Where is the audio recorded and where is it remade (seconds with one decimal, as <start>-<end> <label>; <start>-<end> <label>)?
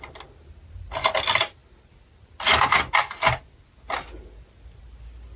0.0-5.4 recorded